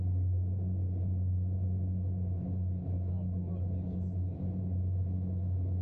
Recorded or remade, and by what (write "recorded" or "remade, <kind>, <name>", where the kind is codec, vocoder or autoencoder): recorded